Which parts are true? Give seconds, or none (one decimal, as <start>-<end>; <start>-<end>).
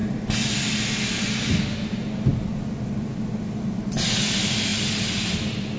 0.0-5.8